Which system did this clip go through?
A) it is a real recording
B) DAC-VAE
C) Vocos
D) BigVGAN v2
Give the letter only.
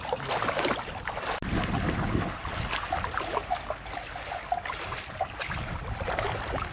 A